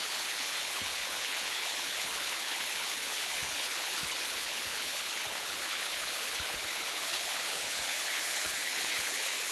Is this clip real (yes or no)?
no